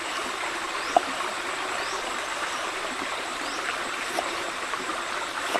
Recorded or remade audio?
recorded